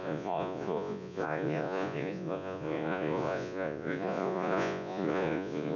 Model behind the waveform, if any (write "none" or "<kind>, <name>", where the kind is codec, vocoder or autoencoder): vocoder, Vocos